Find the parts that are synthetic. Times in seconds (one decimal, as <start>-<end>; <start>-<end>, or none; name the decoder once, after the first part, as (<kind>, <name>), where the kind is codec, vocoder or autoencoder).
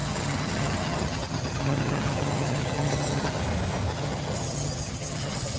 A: 0.0-3.4 (vocoder, HiFi-GAN); 3.9-5.6